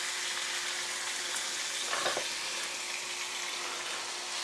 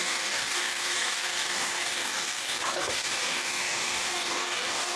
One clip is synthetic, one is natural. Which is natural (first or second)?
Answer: first